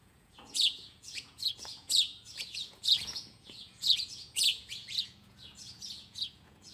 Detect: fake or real fake